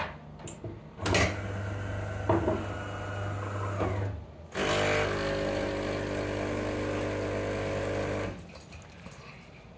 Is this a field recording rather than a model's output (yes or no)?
yes